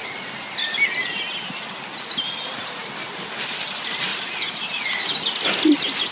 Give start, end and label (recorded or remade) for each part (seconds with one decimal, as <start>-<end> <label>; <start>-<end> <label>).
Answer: 0.0-6.1 recorded